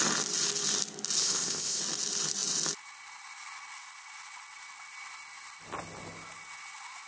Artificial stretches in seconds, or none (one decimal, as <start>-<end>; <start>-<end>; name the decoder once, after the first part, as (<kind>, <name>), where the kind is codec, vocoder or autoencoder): 1.2-1.8 (codec, ZipCodec)